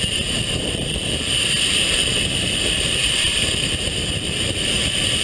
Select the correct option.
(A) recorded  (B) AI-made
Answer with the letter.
B